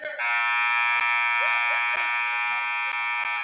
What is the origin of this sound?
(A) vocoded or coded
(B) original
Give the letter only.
B